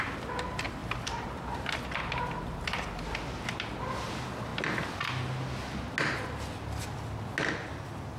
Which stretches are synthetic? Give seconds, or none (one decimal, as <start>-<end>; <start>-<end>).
0.8-1.7

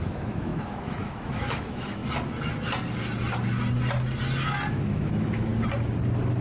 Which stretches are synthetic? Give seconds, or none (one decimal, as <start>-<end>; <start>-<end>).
0.0-2.0; 4.7-5.5

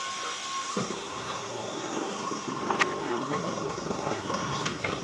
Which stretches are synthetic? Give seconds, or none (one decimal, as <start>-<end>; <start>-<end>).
0.7-2.6; 3.0-5.0

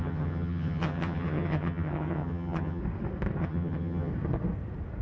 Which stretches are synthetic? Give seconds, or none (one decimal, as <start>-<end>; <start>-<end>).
0.0-2.8; 3.4-4.1

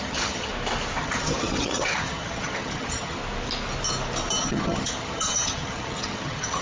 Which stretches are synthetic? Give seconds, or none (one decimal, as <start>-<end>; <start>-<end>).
0.0-0.5; 1.0-3.2; 4.4-6.6

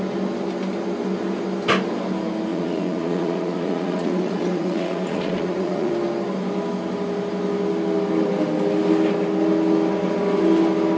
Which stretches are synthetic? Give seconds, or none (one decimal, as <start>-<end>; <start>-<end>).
2.5-5.9